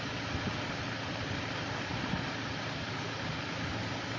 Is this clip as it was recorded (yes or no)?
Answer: yes